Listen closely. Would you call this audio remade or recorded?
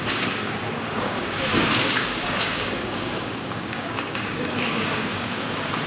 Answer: remade